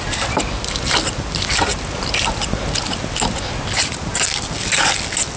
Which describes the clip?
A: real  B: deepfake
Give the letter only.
A